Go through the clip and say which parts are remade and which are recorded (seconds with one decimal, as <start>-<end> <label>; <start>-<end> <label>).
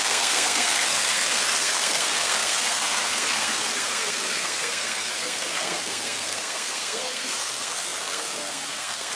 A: 0.0-9.2 remade